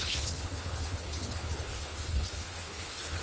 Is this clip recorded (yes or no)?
no